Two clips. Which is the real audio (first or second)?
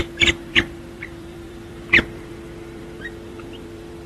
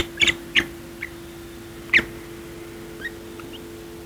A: second